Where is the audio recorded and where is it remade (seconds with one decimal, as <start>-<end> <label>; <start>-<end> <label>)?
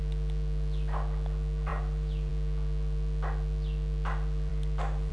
0.0-1.7 recorded; 1.7-2.3 remade; 2.3-4.5 recorded; 4.5-5.1 remade